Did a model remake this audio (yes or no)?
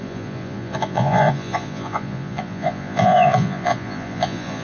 yes